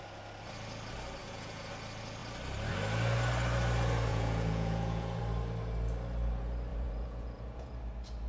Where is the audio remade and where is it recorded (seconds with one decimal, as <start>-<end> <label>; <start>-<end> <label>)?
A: 0.0-1.2 recorded; 1.2-1.7 remade; 1.7-4.1 recorded; 4.1-5.2 remade; 5.2-6.7 recorded; 6.7-7.8 remade; 7.8-8.3 recorded

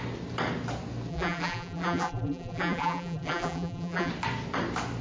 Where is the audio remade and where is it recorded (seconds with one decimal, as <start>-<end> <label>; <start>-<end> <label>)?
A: 0.0-1.1 recorded; 1.1-4.1 remade; 4.1-5.0 recorded

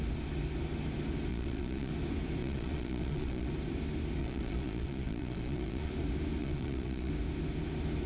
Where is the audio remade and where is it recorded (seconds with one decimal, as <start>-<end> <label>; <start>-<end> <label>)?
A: 0.0-1.3 recorded; 1.3-1.9 remade; 1.9-2.4 recorded; 2.4-3.5 remade; 3.5-4.2 recorded; 4.2-5.9 remade; 5.9-6.4 recorded; 6.4-7.1 remade; 7.1-8.1 recorded

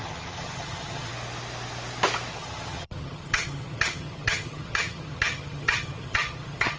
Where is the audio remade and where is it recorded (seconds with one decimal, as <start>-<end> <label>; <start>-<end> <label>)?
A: 0.0-1.1 remade; 1.1-2.3 recorded; 2.3-6.8 remade

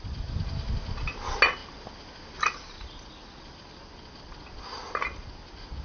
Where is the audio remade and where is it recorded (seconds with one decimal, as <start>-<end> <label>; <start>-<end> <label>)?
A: 0.0-5.8 recorded

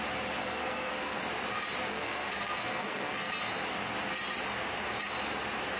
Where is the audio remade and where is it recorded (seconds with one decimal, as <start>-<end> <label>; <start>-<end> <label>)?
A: 0.0-0.4 recorded; 0.4-1.2 remade; 1.2-1.9 recorded; 1.9-3.3 remade; 3.3-5.8 recorded

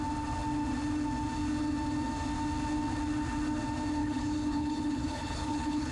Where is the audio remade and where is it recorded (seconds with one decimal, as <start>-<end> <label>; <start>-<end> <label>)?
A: 0.0-4.0 recorded; 4.0-5.9 remade

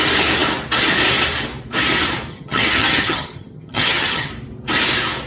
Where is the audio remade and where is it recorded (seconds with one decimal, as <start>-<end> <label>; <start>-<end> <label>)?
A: 0.0-2.3 recorded; 2.3-4.3 remade; 4.3-5.3 recorded